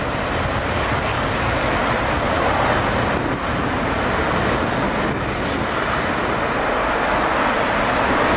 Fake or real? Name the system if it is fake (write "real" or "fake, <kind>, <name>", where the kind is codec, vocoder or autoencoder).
real